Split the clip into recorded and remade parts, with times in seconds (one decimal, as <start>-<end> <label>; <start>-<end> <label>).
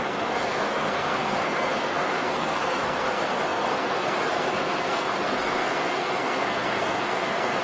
0.0-7.6 remade